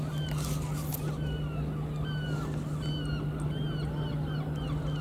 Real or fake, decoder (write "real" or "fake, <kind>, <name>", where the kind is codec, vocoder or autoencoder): real